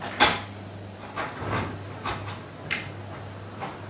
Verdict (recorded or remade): recorded